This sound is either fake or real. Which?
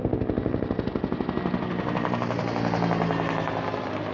real